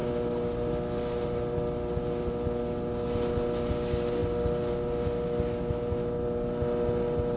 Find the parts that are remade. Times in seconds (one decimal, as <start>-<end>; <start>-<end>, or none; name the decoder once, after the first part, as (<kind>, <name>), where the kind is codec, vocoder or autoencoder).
none